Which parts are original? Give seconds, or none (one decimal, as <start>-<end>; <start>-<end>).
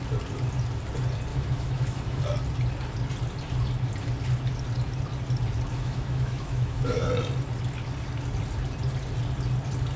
0.0-1.3; 2.2-5.7; 7.1-10.0